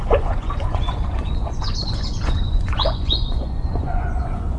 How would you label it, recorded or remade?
remade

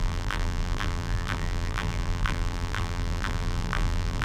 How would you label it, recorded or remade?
remade